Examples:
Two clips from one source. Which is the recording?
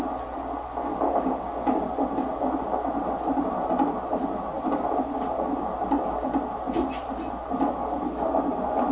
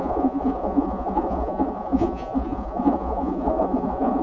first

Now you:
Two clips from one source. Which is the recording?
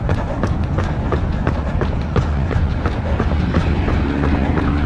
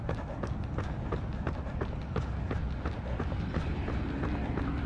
second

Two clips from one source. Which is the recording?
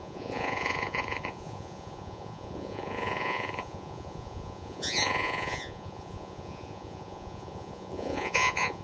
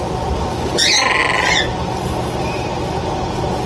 second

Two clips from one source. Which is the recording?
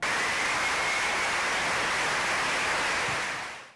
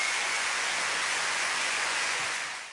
first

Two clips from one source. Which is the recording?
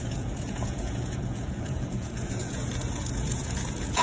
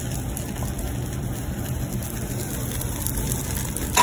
second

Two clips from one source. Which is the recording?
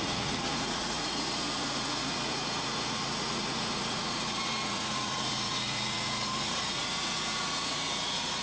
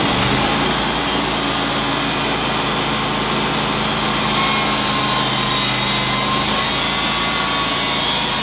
second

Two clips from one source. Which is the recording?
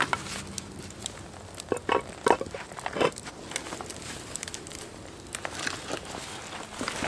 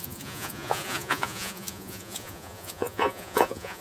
first